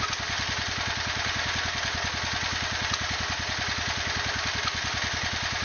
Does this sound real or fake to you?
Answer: real